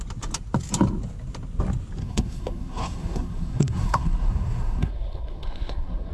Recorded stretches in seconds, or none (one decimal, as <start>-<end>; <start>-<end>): 0.0-2.0